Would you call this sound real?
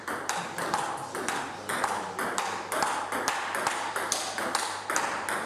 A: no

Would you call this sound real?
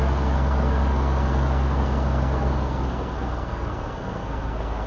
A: no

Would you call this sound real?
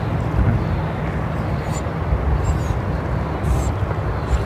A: yes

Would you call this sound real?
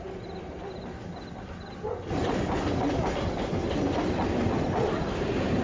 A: yes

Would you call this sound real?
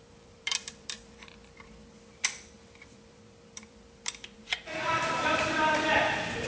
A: no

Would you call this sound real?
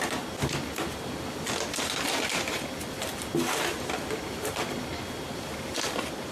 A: yes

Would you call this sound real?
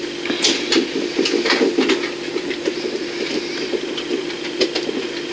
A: yes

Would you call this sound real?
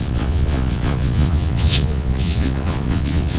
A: no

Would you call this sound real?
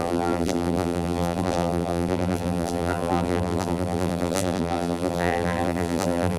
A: no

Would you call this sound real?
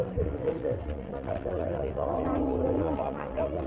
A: no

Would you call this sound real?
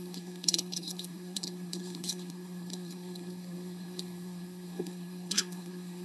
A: no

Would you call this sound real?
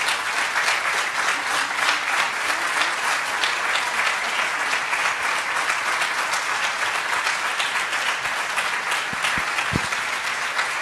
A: yes